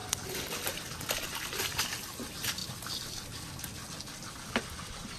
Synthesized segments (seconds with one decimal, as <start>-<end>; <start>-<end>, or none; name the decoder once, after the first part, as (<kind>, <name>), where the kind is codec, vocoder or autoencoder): none